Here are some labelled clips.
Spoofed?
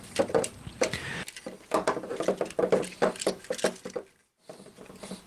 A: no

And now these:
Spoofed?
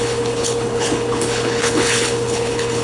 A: yes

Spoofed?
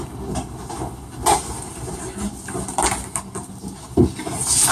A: no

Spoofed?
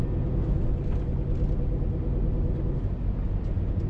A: no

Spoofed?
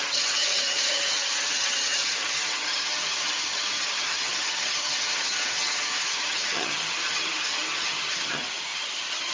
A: yes